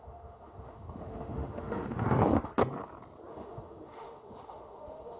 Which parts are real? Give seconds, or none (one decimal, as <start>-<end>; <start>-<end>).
2.5-3.3